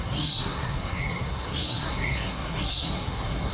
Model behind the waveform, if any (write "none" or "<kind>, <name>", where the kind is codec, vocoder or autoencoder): codec, SNAC